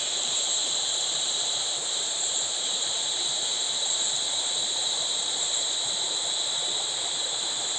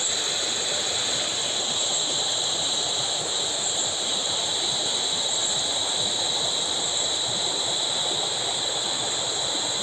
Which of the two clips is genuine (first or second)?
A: second